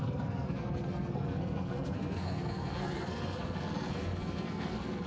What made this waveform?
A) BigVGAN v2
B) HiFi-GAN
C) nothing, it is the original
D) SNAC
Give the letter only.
D